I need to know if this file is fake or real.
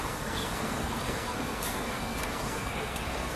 fake